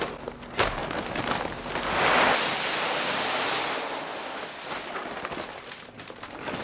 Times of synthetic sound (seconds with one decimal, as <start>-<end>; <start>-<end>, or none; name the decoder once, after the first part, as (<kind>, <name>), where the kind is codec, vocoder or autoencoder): none